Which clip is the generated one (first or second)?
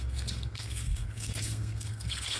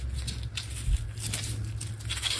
first